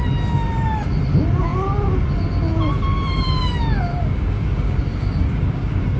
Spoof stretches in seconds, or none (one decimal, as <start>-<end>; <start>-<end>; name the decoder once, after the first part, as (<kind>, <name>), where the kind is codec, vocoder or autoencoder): 3.9-6.0 (codec, DAC)